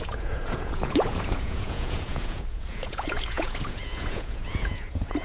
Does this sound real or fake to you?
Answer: fake